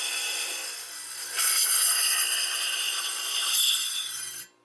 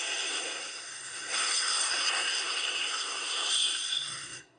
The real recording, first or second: first